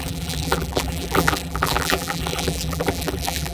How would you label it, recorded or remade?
remade